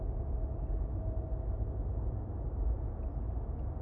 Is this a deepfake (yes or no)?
no